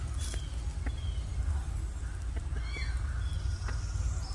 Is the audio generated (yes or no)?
no